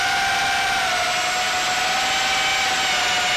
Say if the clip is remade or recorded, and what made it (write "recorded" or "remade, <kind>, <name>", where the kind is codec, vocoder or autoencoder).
recorded